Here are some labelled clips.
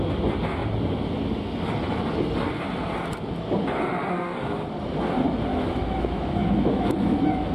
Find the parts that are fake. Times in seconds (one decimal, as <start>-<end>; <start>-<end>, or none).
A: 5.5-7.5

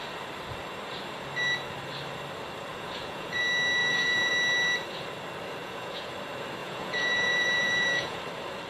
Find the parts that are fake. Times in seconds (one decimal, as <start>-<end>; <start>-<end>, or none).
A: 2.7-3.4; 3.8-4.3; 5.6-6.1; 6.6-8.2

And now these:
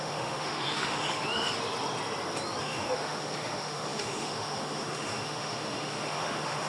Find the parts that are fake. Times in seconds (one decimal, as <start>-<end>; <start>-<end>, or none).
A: 0.0-1.5; 2.6-6.7

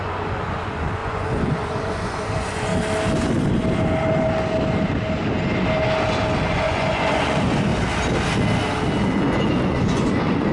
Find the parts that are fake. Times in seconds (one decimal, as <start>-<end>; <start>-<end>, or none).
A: 0.0-2.7; 6.5-7.7; 9.0-10.5